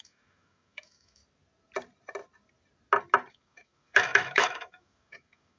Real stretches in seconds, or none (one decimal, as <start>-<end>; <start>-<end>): 1.2-3.3